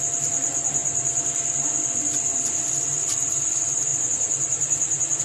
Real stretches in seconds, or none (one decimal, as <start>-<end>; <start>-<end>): 0.0-0.8; 2.7-3.9